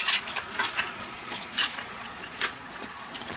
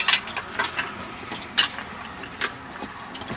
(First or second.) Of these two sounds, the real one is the second